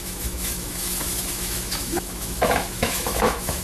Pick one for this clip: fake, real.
fake